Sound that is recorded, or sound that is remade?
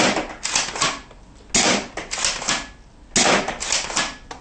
recorded